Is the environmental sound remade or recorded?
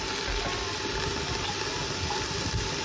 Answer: recorded